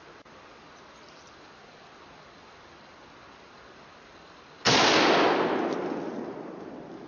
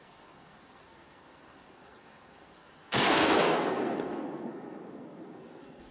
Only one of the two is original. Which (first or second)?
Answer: first